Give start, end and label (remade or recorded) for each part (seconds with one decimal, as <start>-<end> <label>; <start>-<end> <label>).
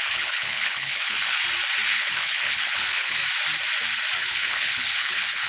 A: 0.0-1.4 remade; 1.4-1.9 recorded; 1.9-3.2 remade; 3.2-4.2 recorded; 4.2-5.5 remade